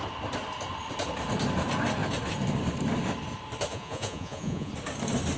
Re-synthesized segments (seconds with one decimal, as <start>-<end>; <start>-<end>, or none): 3.7-4.7